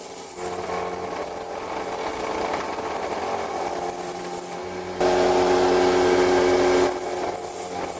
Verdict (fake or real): real